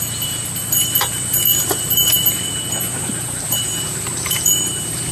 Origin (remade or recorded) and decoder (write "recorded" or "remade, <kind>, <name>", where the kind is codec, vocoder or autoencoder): remade, vocoder, BigVGAN v2